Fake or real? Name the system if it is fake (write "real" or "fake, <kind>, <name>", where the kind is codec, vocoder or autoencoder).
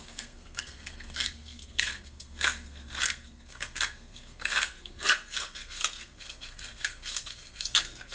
fake, codec, SNAC